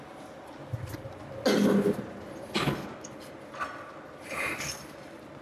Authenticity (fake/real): real